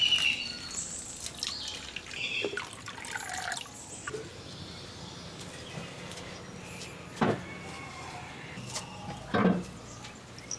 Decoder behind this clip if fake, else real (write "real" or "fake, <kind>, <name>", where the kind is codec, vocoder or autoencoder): real